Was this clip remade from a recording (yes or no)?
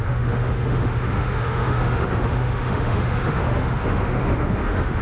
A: yes